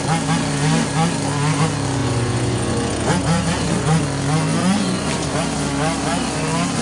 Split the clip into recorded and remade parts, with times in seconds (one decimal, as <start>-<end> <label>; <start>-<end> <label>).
0.0-2.0 recorded; 2.0-4.0 remade; 4.0-4.6 recorded; 4.6-5.4 remade; 5.4-6.8 recorded